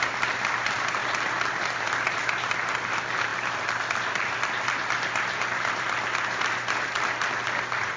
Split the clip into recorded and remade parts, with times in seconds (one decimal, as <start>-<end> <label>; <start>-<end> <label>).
0.0-8.0 recorded